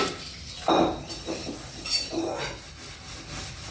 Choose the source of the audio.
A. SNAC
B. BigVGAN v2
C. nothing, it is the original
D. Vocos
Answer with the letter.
C